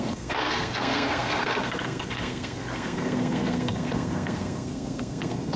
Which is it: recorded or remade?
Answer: remade